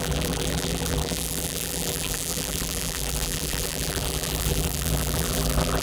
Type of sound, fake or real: fake